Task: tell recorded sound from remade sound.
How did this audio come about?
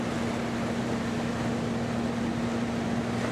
recorded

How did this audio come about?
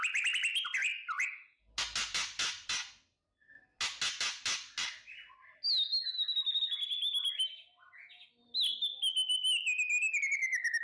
recorded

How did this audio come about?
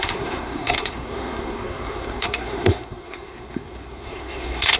remade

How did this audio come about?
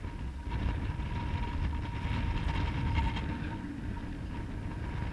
recorded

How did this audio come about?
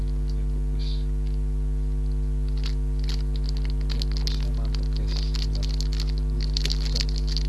recorded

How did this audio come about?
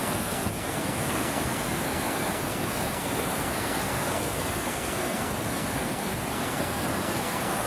remade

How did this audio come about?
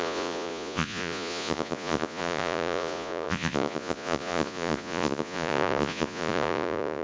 remade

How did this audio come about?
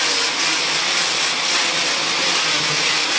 recorded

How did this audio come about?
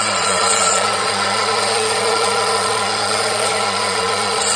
remade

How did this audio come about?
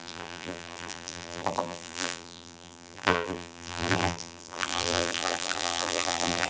remade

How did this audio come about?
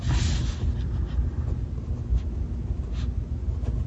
recorded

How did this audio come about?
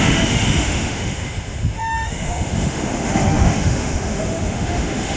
remade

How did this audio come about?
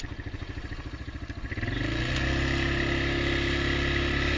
recorded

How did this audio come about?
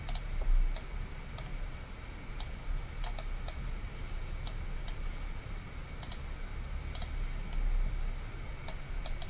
recorded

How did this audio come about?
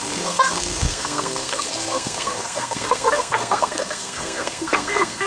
remade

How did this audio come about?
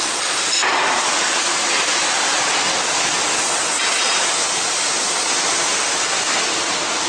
recorded